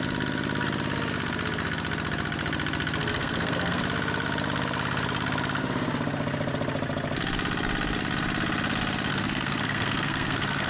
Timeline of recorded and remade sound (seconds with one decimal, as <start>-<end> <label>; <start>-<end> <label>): 0.0-3.0 recorded; 3.0-3.8 remade; 3.8-9.1 recorded; 9.1-10.7 remade

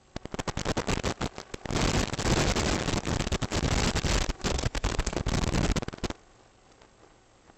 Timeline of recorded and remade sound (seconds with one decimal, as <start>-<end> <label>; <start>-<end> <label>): 0.0-4.5 recorded; 4.5-5.2 remade; 5.2-7.6 recorded

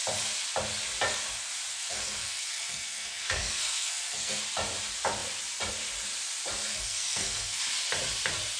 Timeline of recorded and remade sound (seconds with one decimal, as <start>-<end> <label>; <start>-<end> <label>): 0.0-1.7 recorded; 1.7-4.4 remade; 4.4-6.7 recorded; 6.7-7.6 remade; 7.6-8.6 recorded

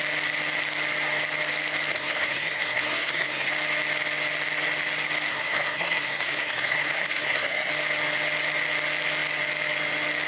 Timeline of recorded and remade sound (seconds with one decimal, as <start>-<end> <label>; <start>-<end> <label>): 0.0-1.9 recorded; 1.9-3.5 remade; 3.5-5.3 recorded; 5.3-7.7 remade; 7.7-10.3 recorded